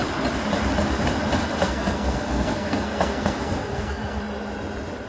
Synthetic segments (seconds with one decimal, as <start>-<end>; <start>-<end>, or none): 1.6-4.2